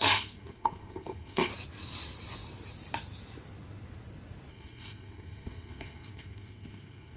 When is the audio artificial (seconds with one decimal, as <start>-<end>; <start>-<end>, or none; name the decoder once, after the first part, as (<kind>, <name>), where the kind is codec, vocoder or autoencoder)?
0.0-1.5 (codec, SNAC); 4.5-7.2